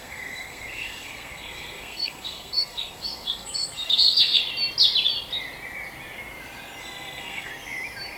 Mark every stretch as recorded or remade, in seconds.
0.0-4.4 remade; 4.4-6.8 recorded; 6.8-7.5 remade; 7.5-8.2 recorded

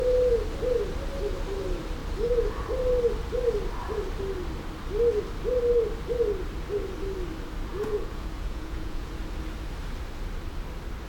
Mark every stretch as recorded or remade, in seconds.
0.0-7.7 recorded; 7.7-9.2 remade; 9.2-11.1 recorded

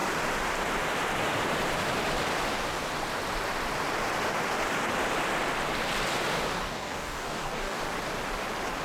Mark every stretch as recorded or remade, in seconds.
0.0-6.6 recorded; 6.6-7.8 remade; 7.8-8.8 recorded

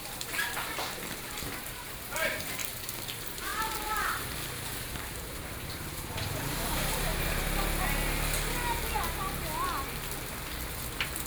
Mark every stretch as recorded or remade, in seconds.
0.0-2.6 remade; 2.6-3.1 recorded; 3.1-3.5 remade; 3.5-5.0 recorded; 5.0-7.1 remade; 7.1-10.7 recorded; 10.7-11.3 remade

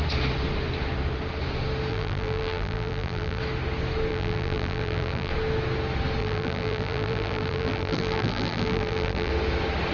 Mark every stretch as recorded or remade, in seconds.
0.0-1.9 recorded; 1.9-3.4 remade; 3.4-4.1 recorded; 4.1-5.3 remade; 5.3-6.2 recorded; 6.2-9.3 remade; 9.3-9.9 recorded

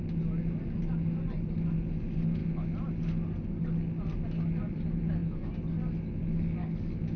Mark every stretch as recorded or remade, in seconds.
0.0-7.2 recorded

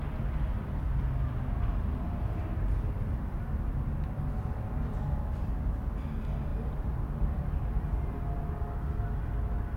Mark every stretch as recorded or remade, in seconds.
0.0-1.7 recorded; 1.7-3.4 remade; 3.4-6.5 recorded; 6.5-8.6 remade; 8.6-9.8 recorded